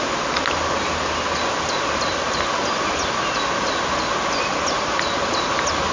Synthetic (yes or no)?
no